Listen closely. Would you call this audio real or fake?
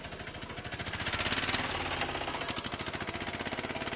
real